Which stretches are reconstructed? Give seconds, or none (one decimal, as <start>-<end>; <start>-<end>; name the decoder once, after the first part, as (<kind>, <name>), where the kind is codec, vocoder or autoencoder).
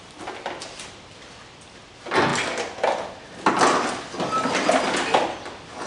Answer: none